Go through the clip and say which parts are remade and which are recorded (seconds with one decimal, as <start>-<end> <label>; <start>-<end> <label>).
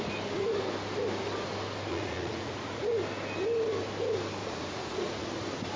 0.0-1.9 recorded; 1.9-2.9 remade; 2.9-4.4 recorded; 4.4-5.2 remade; 5.2-5.8 recorded